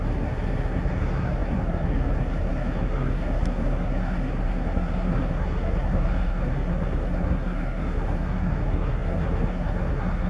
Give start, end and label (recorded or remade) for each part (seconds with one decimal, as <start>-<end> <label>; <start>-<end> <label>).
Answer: 0.0-10.3 remade